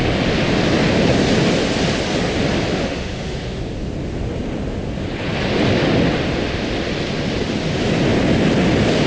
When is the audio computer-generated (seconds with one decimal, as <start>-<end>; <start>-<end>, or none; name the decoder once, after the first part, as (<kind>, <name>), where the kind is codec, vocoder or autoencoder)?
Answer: 2.7-3.6 (autoencoder, DAC-VAE)